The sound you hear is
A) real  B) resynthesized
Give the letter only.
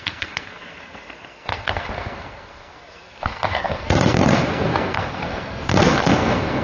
B